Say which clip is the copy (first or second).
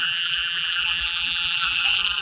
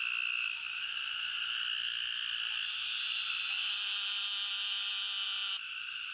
first